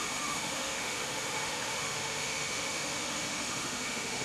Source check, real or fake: fake